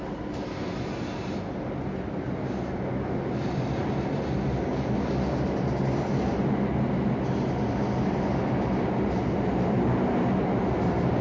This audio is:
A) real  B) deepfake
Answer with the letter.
A